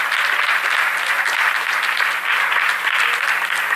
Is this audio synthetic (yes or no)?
no